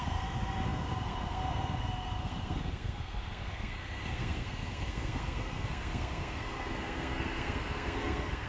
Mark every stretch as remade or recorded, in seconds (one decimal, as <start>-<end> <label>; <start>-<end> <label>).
0.0-8.5 remade